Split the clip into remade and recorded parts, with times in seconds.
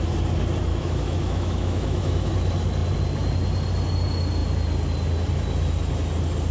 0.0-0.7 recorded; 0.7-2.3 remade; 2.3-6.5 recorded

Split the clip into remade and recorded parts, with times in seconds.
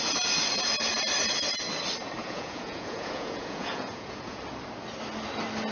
0.0-2.2 recorded; 2.2-4.4 remade; 4.4-5.7 recorded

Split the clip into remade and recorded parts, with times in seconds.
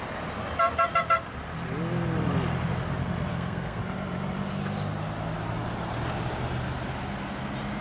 0.0-3.3 recorded; 3.3-3.8 remade; 3.8-7.8 recorded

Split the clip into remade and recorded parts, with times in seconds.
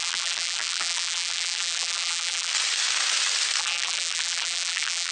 0.0-2.5 remade; 2.5-3.6 recorded; 3.6-5.1 remade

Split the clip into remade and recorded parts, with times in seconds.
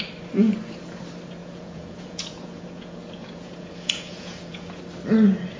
0.0-1.4 recorded; 1.4-4.8 remade; 4.8-5.6 recorded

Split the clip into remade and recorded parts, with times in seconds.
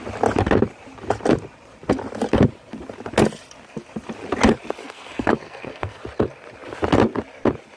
0.0-4.8 recorded; 4.8-6.0 remade; 6.0-7.8 recorded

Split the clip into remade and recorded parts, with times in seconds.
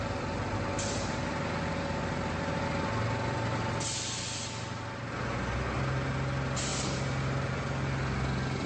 0.0-8.7 recorded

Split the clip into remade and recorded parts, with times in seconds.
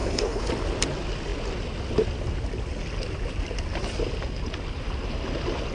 0.0-0.5 remade; 0.5-5.7 recorded